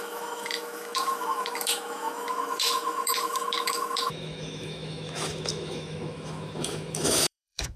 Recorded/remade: remade